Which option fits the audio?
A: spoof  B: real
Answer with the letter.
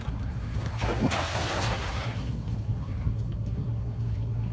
A